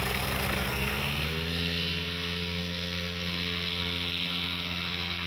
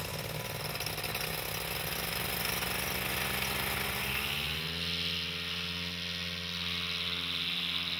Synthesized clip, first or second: first